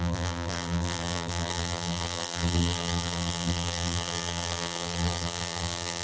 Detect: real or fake fake